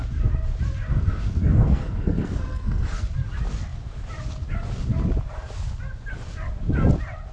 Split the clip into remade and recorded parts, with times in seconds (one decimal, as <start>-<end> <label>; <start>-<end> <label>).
0.0-0.9 recorded; 0.9-3.1 remade; 3.1-7.3 recorded